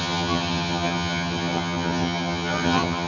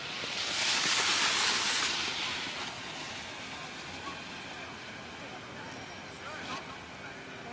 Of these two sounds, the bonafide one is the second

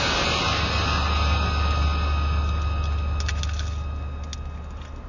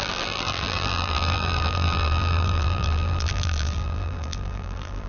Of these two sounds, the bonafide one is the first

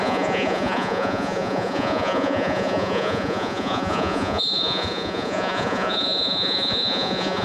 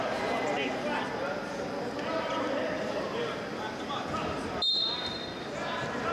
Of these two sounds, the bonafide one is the second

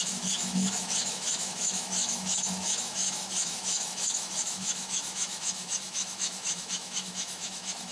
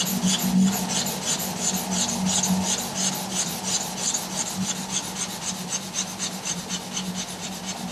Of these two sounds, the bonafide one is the second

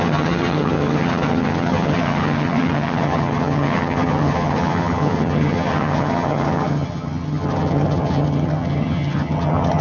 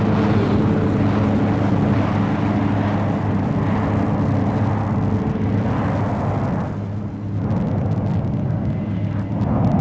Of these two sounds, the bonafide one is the second